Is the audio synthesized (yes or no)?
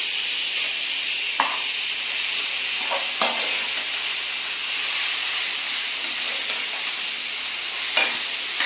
yes